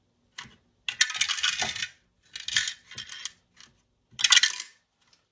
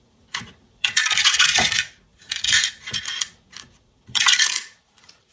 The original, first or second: first